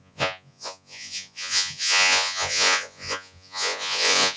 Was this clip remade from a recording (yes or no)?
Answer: yes